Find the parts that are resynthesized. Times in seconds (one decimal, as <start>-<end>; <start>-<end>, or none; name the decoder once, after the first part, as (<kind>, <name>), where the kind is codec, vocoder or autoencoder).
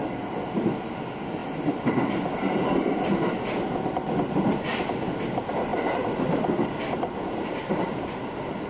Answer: none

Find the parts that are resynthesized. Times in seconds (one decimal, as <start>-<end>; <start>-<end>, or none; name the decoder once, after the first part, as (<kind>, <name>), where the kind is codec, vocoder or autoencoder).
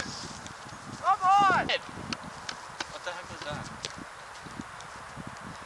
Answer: none